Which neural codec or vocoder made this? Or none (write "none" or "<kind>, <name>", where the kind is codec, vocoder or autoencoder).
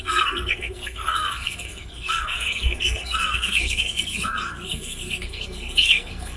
codec, SNAC